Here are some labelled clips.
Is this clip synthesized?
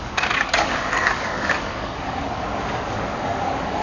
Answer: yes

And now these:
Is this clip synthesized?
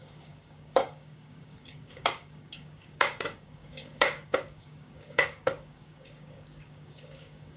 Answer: yes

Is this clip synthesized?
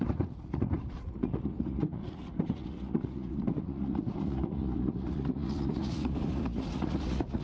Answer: yes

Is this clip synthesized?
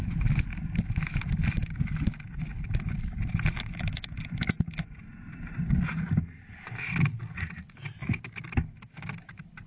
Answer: no